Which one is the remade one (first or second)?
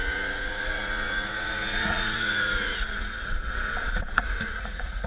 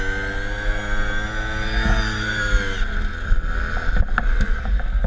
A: first